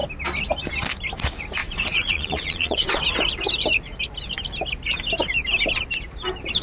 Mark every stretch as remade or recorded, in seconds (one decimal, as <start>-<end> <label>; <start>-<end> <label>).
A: 0.0-1.6 recorded; 1.6-3.0 remade; 3.0-6.6 recorded